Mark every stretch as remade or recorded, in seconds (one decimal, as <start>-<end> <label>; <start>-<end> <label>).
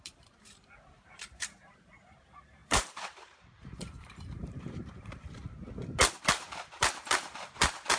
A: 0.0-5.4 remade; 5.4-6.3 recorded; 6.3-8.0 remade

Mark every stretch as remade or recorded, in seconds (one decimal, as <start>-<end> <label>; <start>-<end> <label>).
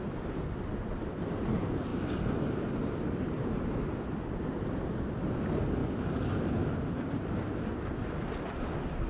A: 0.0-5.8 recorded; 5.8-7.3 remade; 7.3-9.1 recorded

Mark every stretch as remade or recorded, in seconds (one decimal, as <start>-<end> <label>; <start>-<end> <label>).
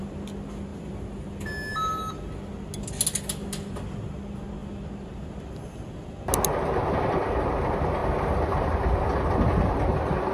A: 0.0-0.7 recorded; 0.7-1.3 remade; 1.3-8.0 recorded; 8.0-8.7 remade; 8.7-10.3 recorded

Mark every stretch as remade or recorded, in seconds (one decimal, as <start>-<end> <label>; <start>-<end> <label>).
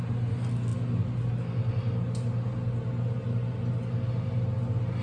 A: 0.0-5.0 recorded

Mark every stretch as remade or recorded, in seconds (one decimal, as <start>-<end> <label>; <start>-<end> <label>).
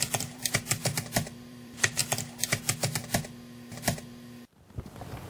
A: 0.0-2.0 remade; 2.0-5.3 recorded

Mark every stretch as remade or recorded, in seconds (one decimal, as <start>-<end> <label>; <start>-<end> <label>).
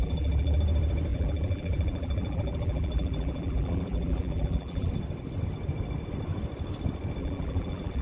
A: 0.0-0.6 remade; 0.6-1.1 recorded; 1.1-4.9 remade; 4.9-7.2 recorded; 7.2-8.0 remade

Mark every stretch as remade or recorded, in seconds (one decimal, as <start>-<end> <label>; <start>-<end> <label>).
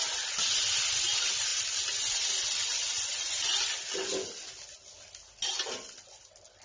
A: 0.0-6.6 recorded